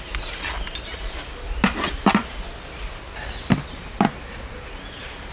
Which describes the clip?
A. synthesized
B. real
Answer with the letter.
B